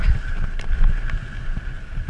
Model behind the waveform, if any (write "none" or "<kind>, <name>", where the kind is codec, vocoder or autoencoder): none